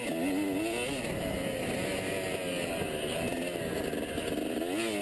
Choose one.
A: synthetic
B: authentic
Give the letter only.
B